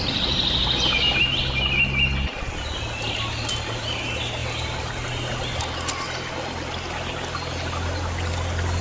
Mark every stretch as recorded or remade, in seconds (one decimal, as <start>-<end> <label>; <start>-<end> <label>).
0.0-8.8 recorded